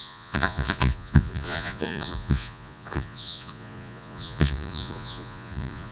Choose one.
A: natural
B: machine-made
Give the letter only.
B